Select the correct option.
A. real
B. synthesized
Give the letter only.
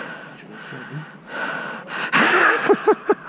A